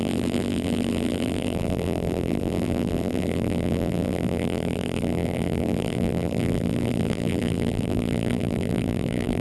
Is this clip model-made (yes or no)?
yes